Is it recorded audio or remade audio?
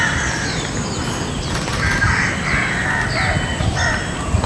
recorded